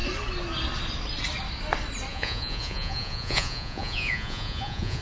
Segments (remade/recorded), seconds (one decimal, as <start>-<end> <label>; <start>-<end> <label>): 0.0-2.1 recorded; 2.1-5.0 remade